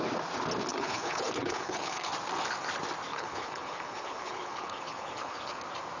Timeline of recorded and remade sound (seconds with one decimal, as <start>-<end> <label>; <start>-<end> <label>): 0.0-0.7 recorded; 0.7-2.1 remade; 2.1-3.1 recorded; 3.1-5.6 remade; 5.6-6.0 recorded

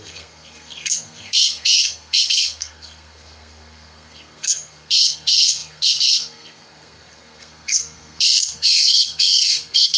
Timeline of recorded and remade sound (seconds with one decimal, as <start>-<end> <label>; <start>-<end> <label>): 0.0-10.0 remade